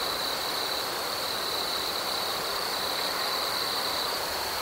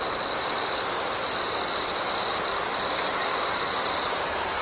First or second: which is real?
second